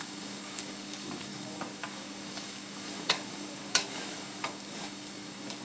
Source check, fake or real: fake